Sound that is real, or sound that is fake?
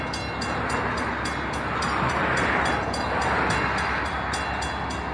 real